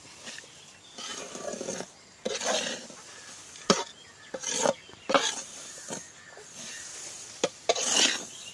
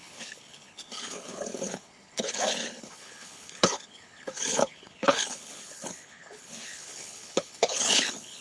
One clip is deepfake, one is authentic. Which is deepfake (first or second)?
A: second